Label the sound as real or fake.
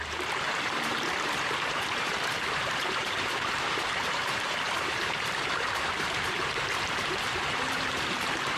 fake